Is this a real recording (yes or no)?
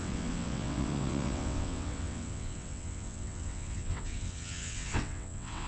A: no